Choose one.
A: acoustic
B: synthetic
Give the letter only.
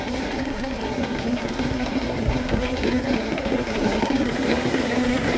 B